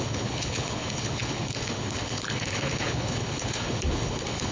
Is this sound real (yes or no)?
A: no